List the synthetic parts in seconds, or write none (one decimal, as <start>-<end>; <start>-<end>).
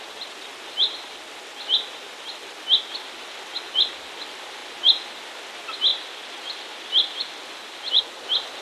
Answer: 5.9-8.2